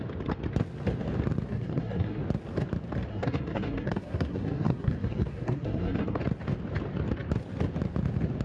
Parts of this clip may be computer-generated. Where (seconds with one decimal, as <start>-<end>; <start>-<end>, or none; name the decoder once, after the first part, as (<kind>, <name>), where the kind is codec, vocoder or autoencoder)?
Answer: 1.5-2.2 (codec, SNAC); 3.1-6.2